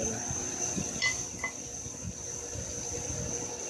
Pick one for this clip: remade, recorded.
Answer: recorded